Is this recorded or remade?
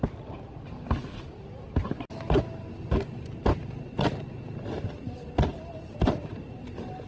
recorded